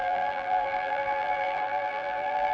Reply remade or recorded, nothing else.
remade